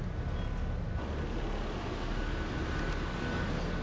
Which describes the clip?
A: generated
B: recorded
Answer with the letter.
B